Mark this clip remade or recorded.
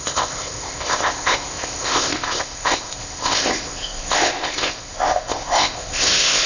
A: remade